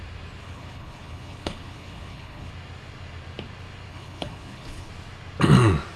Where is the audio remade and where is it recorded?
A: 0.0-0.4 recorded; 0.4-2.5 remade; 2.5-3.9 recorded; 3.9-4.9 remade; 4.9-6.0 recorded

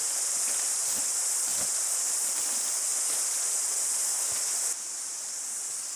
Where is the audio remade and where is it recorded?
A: 0.0-6.0 recorded